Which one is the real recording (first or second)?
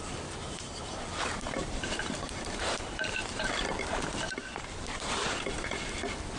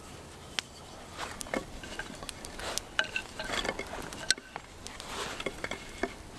second